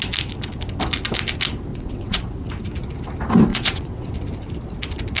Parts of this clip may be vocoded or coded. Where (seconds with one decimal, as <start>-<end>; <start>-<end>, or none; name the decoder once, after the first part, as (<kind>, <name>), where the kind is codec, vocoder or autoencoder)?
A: 1.7-2.2 (vocoder, WaveNeXt); 3.5-4.1